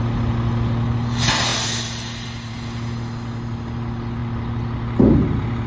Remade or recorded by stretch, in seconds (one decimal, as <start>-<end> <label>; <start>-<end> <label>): 0.0-5.7 recorded